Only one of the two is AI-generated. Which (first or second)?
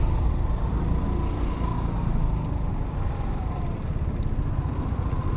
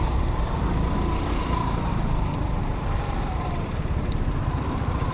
second